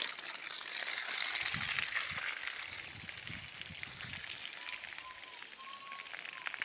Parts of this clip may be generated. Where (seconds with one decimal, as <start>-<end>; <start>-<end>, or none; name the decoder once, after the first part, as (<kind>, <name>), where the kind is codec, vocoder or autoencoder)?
none

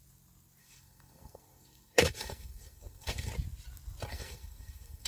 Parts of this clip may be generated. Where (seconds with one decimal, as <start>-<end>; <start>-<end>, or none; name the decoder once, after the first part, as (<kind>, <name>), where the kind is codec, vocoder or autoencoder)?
0.6-3.3 (codec, SNAC); 4.1-5.1

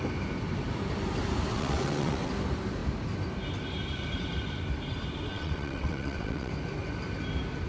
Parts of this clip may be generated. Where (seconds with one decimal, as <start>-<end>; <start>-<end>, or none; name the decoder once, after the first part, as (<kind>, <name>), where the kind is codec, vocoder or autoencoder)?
1.5-2.3 (vocoder, WaveNeXt); 5.3-6.5